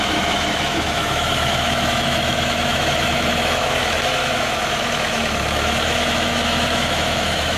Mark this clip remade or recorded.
remade